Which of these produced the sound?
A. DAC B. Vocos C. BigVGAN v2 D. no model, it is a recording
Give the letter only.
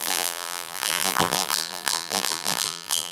C